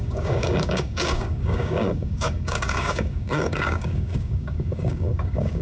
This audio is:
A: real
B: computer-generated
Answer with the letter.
B